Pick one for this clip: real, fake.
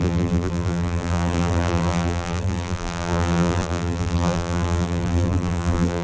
fake